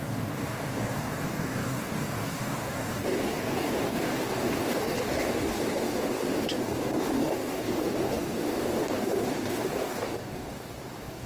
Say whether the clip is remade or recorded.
remade